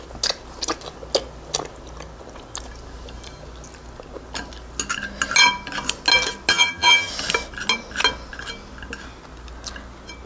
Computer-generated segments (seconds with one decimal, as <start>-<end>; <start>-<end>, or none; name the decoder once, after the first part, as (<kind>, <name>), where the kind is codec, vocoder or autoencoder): 6.5-7.1 (vocoder, HiFi-GAN)